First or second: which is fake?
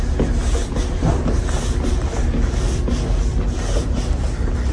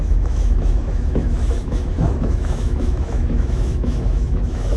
second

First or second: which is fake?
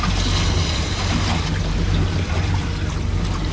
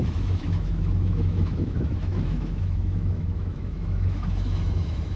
second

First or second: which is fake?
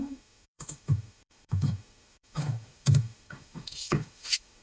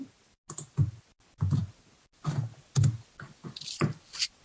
first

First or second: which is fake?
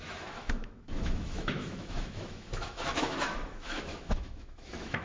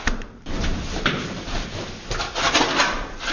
first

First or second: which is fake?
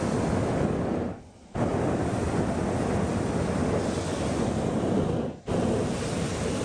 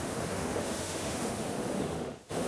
second